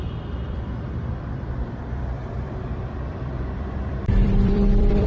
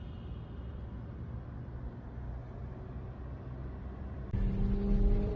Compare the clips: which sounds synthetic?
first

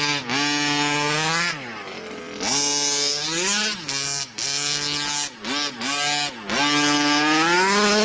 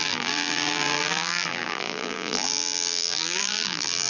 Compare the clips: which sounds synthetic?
second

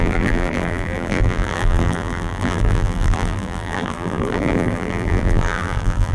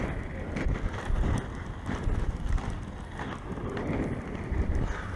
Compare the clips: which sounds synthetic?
first